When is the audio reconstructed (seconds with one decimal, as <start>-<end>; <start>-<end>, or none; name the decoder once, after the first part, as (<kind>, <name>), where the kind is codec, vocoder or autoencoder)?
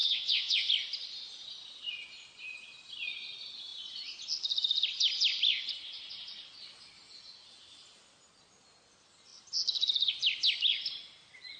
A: 0.0-0.7 (vocoder, WaveNeXt)